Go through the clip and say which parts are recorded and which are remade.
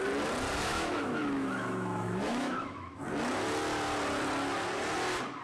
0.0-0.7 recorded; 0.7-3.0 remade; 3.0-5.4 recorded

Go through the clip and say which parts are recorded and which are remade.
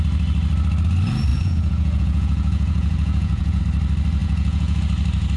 0.0-1.3 recorded; 1.3-3.6 remade; 3.6-4.2 recorded; 4.2-4.8 remade; 4.8-5.4 recorded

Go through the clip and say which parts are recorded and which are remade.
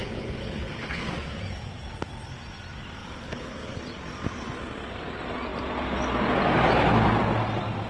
0.0-1.1 remade; 1.1-3.0 recorded; 3.0-3.8 remade; 3.8-7.9 recorded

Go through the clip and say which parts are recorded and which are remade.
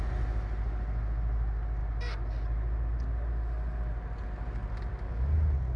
0.0-5.8 recorded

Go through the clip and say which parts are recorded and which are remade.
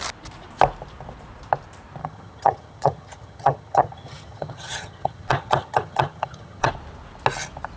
0.0-2.0 recorded; 2.0-6.7 remade; 6.7-7.8 recorded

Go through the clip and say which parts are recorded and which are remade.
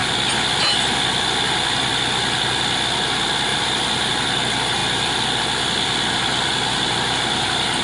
0.0-7.8 recorded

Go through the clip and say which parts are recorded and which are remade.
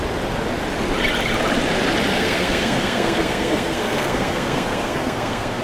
0.0-2.1 recorded; 2.1-5.6 remade